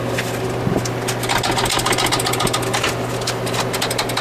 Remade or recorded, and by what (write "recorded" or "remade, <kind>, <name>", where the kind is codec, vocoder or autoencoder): recorded